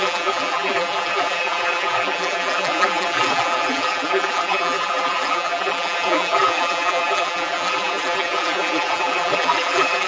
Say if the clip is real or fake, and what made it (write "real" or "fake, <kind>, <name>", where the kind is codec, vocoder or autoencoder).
fake, vocoder, BigVGAN v2